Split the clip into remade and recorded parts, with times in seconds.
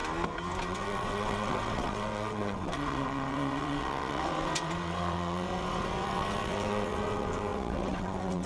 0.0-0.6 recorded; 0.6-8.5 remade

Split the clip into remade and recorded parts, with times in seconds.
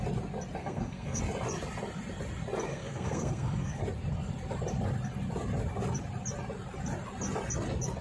0.0-0.6 recorded; 0.6-1.2 remade; 1.2-2.7 recorded; 2.7-3.8 remade; 3.8-8.0 recorded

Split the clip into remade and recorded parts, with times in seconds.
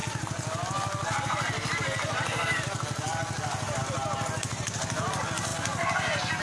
0.0-6.4 recorded